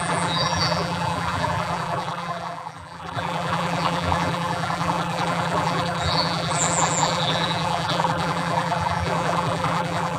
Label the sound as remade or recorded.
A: remade